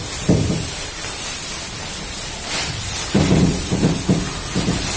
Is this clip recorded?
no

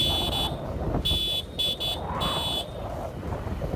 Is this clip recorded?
yes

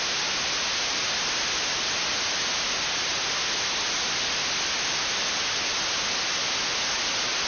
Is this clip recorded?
yes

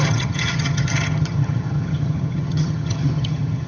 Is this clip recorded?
no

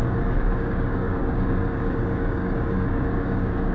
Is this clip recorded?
no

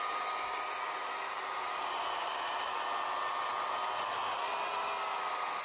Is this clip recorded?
yes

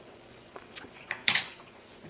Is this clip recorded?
no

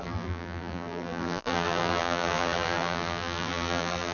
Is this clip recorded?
no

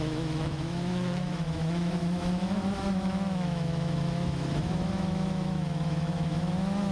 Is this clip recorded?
no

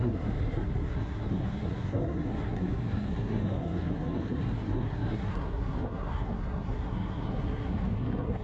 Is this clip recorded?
no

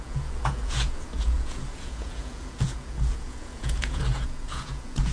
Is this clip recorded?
no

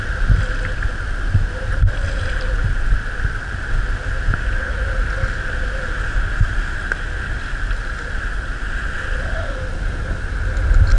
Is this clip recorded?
yes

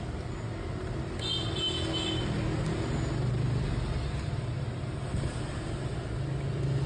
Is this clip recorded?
yes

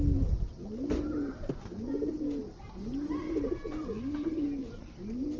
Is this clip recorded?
yes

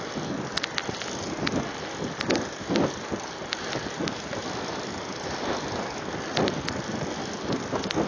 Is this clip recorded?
yes